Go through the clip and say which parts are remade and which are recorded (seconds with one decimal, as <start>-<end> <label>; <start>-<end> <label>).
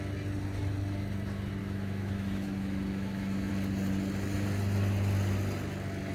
0.0-1.6 recorded; 1.6-3.5 remade; 3.5-6.1 recorded